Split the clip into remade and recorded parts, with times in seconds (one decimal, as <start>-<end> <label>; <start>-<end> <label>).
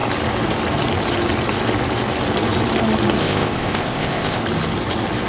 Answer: 0.0-3.2 recorded; 3.2-4.4 remade; 4.4-5.3 recorded